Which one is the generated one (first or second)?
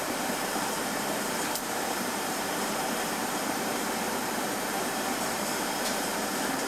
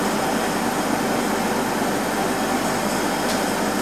first